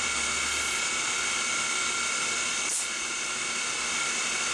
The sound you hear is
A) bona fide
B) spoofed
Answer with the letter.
A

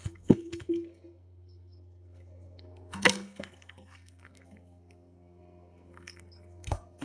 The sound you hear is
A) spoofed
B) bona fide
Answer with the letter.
A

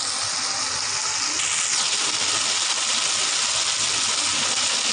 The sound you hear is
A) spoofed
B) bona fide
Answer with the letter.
B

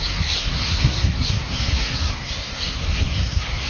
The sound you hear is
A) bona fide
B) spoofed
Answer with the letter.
B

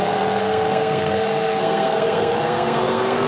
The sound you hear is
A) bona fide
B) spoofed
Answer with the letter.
B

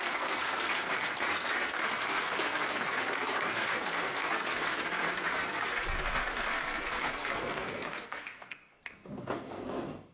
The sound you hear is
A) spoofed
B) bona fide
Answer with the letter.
A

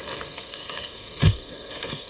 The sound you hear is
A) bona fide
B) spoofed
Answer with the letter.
B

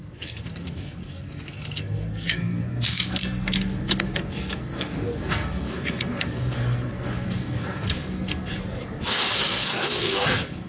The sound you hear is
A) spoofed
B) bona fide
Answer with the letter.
A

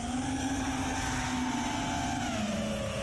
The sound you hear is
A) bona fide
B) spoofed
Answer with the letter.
A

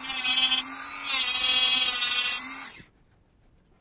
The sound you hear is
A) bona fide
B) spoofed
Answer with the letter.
A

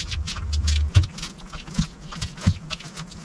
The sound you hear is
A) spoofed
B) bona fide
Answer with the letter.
B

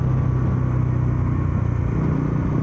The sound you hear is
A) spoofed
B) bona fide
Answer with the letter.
B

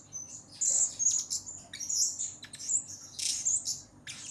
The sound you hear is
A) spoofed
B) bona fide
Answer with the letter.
B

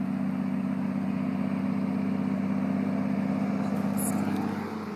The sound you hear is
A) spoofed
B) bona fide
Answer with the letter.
B